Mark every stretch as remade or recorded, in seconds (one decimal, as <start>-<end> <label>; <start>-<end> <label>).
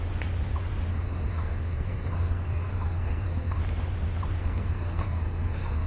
0.0-0.9 recorded; 0.9-3.6 remade; 3.6-4.4 recorded; 4.4-5.9 remade